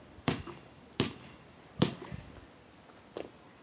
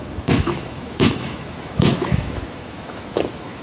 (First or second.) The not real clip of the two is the second